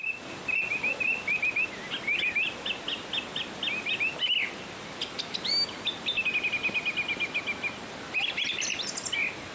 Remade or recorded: recorded